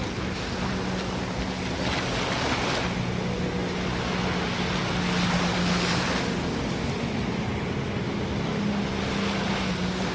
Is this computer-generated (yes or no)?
no